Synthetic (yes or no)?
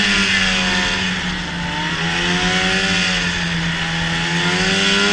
no